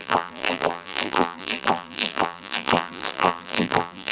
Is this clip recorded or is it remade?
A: remade